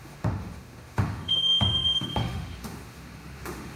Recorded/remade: remade